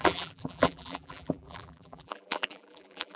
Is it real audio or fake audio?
fake